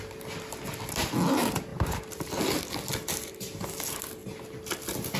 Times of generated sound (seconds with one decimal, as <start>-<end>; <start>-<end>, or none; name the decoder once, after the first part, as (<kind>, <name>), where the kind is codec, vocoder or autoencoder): none